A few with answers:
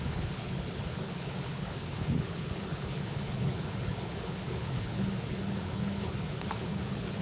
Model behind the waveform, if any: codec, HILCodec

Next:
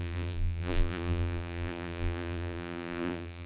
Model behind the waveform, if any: vocoder, BigVGAN v2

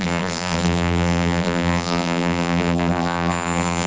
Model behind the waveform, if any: vocoder, BigVGAN v2